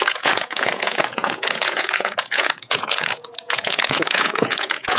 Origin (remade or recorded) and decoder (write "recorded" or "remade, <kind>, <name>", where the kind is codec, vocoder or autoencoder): remade, vocoder, Vocos